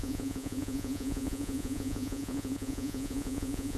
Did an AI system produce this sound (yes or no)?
yes